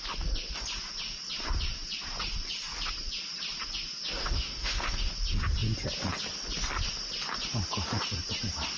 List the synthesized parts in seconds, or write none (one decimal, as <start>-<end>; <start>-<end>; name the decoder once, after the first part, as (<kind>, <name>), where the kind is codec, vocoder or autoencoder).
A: 4.2-5.1 (autoencoder, DAC-VAE)